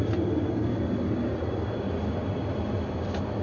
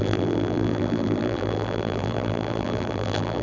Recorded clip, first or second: first